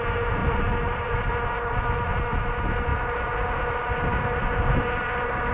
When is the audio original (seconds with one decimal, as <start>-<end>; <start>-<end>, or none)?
0.0-0.4; 1.3-5.5